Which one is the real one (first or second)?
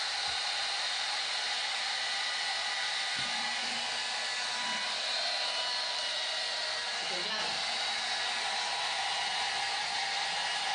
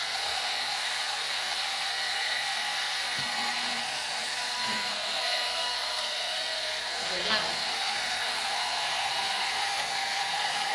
first